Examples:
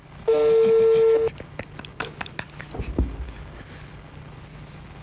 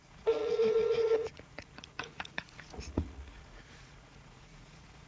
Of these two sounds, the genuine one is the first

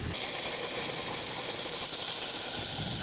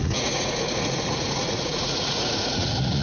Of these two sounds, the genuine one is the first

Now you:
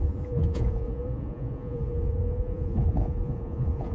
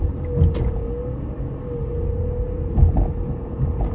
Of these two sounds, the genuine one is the second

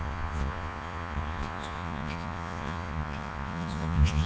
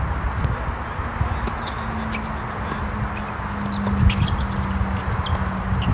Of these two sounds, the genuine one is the second